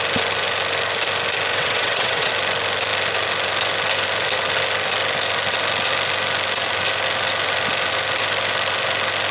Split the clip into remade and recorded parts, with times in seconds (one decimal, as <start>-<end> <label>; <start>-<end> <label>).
0.0-1.5 recorded; 1.5-2.3 remade; 2.3-9.3 recorded